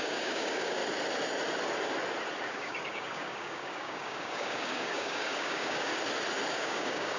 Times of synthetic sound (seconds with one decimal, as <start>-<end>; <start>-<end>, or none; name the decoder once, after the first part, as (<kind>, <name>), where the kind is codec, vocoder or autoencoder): 0.0-0.8 (codec, DAC); 2.4-5.9; 6.5-7.2